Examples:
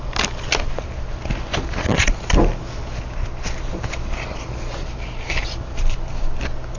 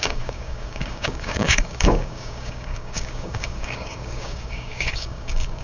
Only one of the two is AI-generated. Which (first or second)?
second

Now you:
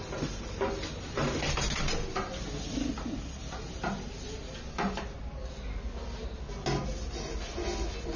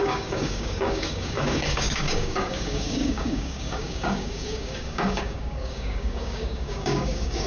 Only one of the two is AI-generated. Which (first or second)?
second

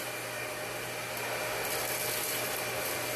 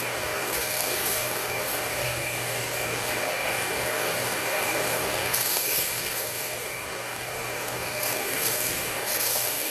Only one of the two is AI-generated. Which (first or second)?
second